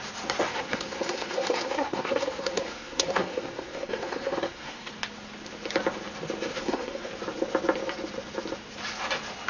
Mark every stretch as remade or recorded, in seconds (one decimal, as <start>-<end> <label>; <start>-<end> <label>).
0.0-0.5 recorded; 0.5-4.9 remade; 4.9-6.5 recorded; 6.5-7.1 remade; 7.1-9.5 recorded